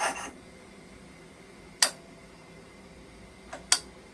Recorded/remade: recorded